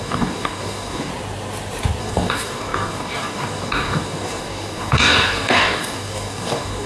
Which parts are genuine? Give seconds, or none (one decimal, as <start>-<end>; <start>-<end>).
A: 1.1-2.0